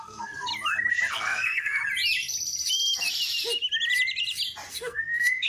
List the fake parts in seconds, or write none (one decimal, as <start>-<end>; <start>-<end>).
0.0-0.5; 1.1-1.8; 4.7-5.5